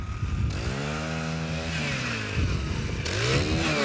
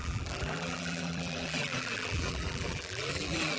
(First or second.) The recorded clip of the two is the first